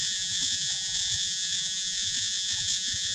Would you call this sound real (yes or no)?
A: no